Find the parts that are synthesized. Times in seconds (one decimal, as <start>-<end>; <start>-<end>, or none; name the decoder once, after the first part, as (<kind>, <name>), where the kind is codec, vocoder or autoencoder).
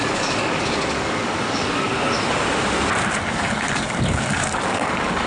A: 0.0-1.9 (codec, DAC); 3.3-5.3